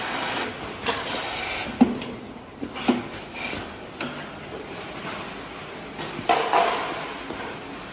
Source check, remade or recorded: recorded